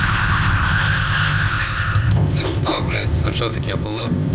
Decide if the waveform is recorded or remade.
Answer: remade